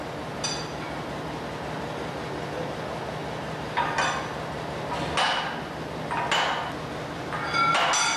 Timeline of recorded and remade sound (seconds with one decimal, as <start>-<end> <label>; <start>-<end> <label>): 0.0-8.2 recorded